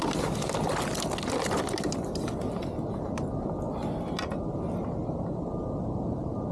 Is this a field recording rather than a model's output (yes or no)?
yes